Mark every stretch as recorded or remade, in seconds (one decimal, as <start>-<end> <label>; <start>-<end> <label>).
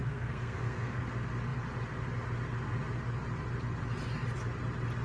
0.0-1.0 remade; 1.0-5.0 recorded